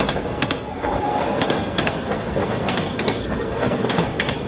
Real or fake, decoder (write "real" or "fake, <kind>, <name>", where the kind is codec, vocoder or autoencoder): fake, codec, SNAC